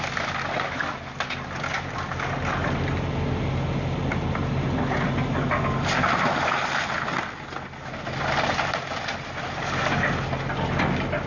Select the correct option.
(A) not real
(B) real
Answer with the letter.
B